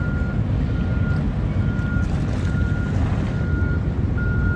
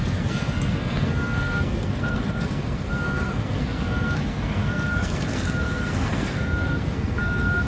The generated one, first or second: second